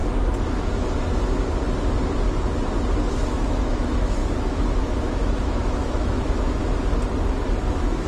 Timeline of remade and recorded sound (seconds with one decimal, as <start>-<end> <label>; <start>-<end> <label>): 0.0-3.1 recorded; 3.1-6.6 remade; 6.6-7.6 recorded; 7.6-8.1 remade